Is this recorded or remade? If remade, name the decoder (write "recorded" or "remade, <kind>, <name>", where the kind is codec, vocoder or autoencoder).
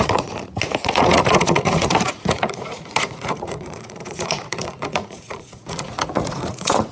remade, vocoder, Vocos